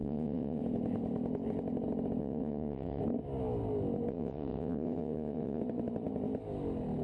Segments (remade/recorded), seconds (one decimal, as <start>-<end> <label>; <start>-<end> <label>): 0.0-0.6 remade; 0.6-2.2 recorded; 2.2-3.0 remade; 3.0-4.1 recorded; 4.1-5.6 remade; 5.6-7.0 recorded